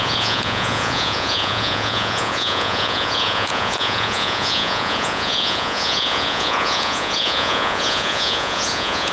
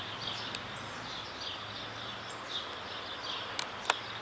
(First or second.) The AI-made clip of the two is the first